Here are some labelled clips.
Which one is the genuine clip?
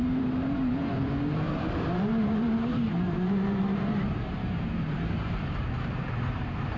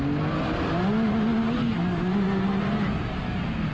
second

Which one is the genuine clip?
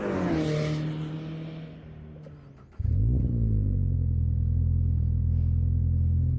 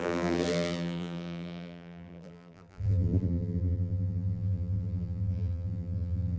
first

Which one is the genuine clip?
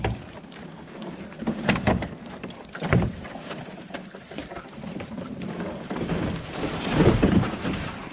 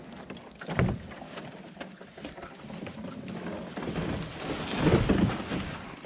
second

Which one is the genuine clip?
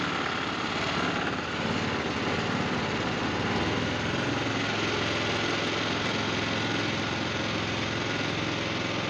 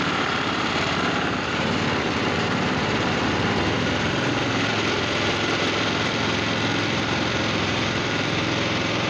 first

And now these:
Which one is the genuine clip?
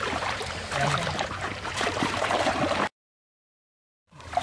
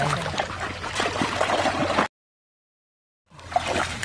second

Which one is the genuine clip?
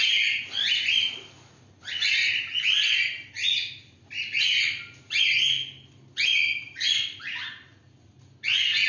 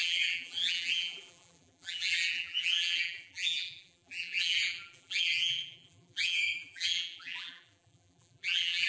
first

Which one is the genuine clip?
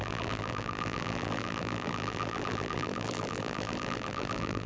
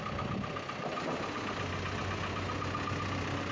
second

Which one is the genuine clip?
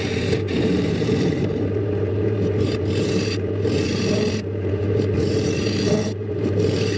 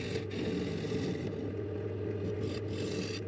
second